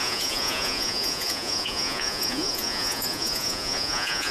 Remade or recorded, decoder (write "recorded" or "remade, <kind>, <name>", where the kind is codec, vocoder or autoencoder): remade, vocoder, Vocos